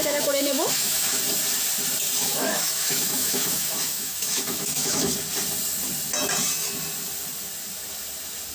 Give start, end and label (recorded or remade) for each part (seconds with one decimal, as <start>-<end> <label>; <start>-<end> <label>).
0.0-1.2 remade; 1.2-2.2 recorded; 2.2-5.1 remade; 5.1-8.5 recorded